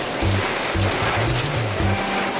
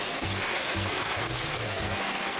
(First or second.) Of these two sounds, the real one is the first